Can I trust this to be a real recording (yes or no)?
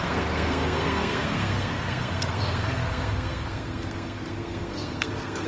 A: no